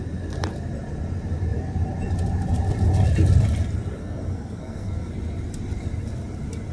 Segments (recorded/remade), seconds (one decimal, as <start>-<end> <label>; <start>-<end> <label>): 0.0-4.0 recorded; 4.0-5.1 remade; 5.1-6.7 recorded